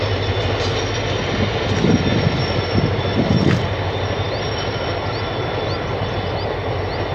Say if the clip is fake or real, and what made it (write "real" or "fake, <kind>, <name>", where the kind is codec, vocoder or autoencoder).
real